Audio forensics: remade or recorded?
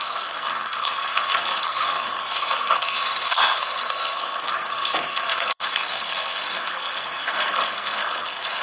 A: remade